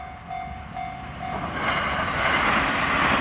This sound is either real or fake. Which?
real